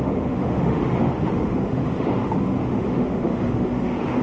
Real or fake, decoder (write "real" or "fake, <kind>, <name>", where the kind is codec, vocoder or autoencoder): fake, autoencoder, DAC-VAE